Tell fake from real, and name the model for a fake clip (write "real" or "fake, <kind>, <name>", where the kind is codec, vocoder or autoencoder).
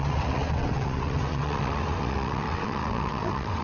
fake, vocoder, WaveNeXt